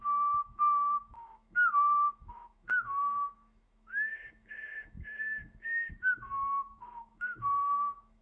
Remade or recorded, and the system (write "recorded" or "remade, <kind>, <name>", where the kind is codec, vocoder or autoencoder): remade, autoencoder, DAC-VAE